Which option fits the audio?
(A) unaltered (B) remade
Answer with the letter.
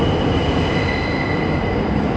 A